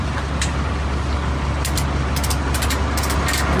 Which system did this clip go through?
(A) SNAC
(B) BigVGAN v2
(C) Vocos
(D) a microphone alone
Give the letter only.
D